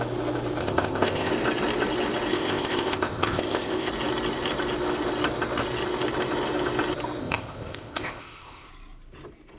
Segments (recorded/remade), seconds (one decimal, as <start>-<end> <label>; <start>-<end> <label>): 0.0-0.6 recorded; 0.6-1.3 remade; 1.3-2.3 recorded; 2.3-3.9 remade; 3.9-7.2 recorded; 7.2-8.7 remade; 8.7-9.6 recorded